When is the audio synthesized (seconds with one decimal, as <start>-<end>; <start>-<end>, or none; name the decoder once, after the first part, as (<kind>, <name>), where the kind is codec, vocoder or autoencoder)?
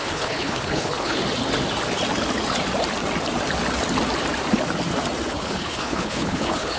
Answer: 0.0-1.2 (codec, HILCodec); 5.3-6.8